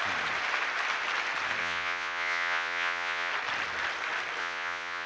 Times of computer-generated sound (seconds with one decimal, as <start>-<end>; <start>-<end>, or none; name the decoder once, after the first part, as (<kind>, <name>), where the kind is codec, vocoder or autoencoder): 1.6-3.3 (vocoder, Vocos); 4.4-5.1